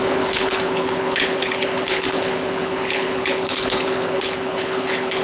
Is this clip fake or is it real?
fake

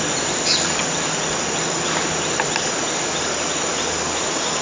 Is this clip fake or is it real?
real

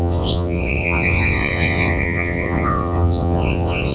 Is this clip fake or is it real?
fake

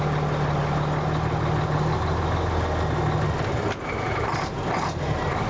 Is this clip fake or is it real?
real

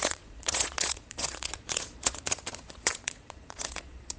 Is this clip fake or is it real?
fake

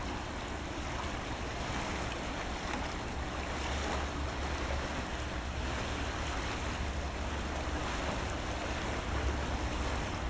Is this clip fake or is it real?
real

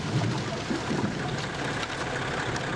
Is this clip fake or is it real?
real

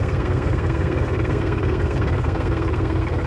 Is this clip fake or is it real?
fake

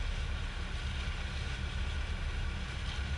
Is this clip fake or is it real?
real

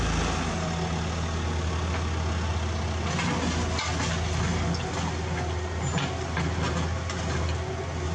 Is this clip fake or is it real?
real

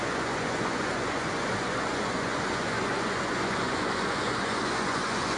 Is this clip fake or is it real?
fake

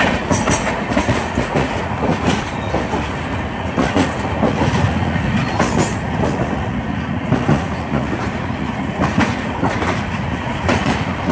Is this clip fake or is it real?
fake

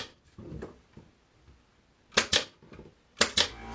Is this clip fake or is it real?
real